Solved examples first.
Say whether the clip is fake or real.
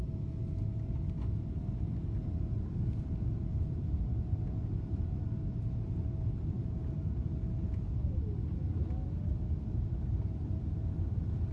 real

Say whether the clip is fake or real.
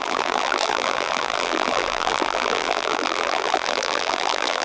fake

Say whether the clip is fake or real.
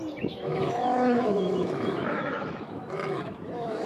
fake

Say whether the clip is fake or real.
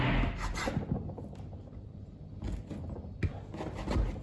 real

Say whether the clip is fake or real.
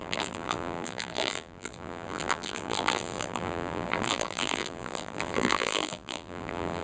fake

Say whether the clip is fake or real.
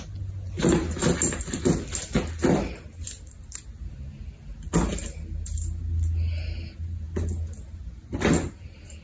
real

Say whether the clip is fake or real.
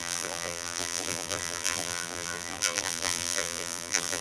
fake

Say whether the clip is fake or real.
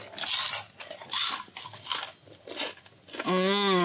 real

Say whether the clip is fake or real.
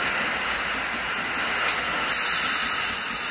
real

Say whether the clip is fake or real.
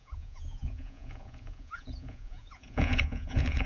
fake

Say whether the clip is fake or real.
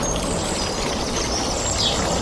real